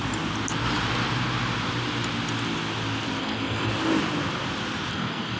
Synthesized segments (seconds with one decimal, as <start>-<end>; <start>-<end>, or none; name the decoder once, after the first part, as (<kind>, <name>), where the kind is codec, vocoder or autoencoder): 3.2-3.7 (codec, SNAC); 4.9-5.4